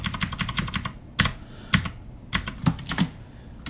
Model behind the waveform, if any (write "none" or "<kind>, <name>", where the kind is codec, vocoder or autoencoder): none